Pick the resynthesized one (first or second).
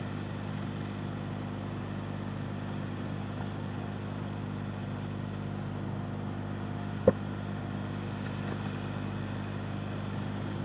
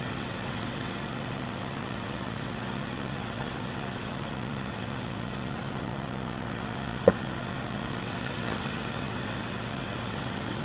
second